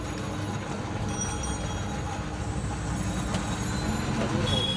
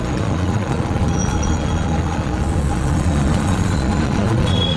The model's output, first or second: second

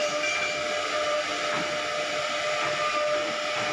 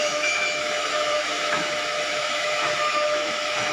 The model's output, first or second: second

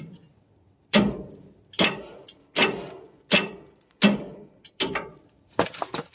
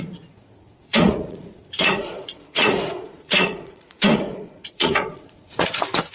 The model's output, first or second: second